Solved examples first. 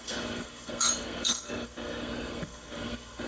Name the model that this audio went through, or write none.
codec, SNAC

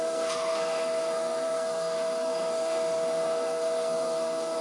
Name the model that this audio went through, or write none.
codec, SNAC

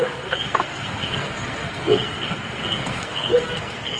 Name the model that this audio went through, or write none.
codec, SNAC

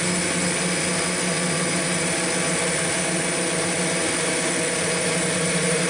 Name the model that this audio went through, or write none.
none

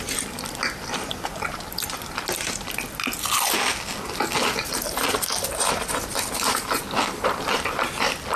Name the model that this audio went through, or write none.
none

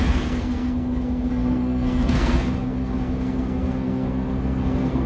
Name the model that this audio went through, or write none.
codec, SNAC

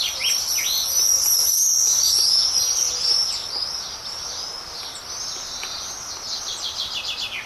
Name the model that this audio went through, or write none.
none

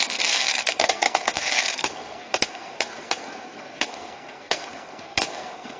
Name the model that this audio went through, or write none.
codec, SNAC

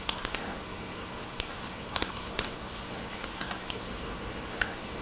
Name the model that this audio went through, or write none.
codec, SNAC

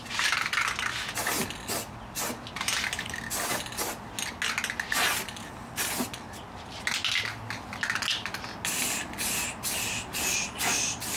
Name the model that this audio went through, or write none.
none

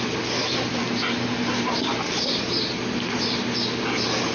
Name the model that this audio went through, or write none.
none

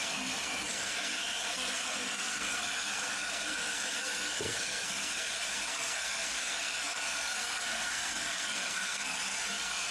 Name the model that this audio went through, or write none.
codec, SNAC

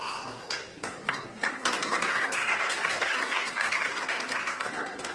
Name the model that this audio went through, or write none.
codec, SNAC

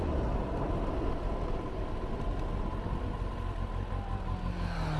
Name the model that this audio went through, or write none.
none